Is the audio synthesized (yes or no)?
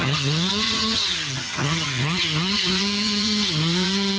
yes